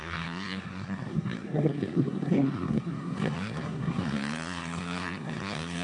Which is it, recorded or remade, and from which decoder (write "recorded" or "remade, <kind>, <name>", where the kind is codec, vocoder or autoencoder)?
remade, codec, SNAC